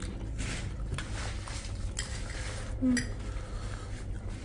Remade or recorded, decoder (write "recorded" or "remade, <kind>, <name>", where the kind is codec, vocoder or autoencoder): recorded